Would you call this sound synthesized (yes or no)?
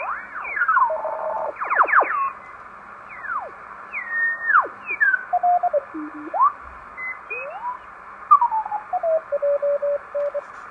no